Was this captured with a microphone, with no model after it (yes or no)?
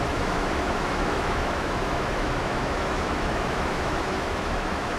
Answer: no